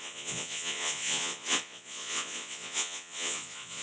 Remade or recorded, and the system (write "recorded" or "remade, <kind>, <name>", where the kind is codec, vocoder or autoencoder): remade, vocoder, Vocos